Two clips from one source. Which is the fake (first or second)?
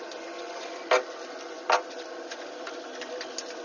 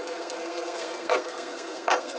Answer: second